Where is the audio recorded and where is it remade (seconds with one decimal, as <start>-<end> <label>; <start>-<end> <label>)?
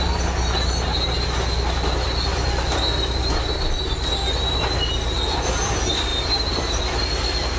0.0-7.6 recorded